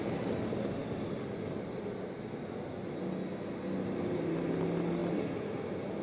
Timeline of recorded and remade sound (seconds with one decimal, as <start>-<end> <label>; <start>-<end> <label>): 0.0-6.0 recorded

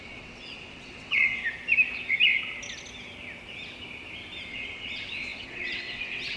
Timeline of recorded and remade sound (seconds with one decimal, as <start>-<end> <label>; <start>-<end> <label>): 0.0-1.4 remade; 1.4-4.5 recorded; 4.5-6.4 remade

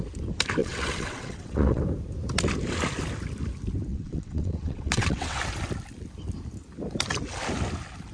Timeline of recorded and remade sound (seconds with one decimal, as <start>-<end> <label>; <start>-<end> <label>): 0.0-0.6 recorded; 0.6-1.8 remade; 1.8-3.9 recorded; 3.9-5.4 remade; 5.4-8.1 recorded

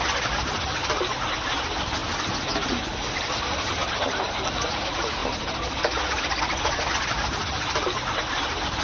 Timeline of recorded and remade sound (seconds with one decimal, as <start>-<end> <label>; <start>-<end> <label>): 0.0-8.8 recorded

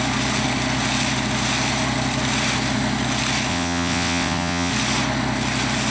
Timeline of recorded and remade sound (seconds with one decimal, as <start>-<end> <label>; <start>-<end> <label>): 0.0-3.5 recorded; 3.5-4.7 remade; 4.7-5.9 recorded

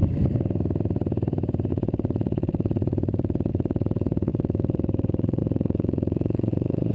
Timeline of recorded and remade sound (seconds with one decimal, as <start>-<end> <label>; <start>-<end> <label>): 0.0-1.7 recorded; 1.7-6.9 remade

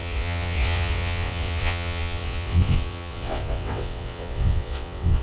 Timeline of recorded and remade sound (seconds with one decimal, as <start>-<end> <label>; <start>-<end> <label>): 0.0-5.2 remade

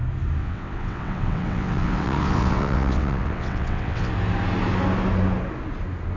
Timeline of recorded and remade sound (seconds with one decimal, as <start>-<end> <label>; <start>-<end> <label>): 0.0-0.4 recorded; 0.4-4.1 remade; 4.1-6.2 recorded